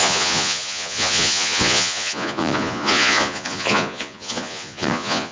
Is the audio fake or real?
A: fake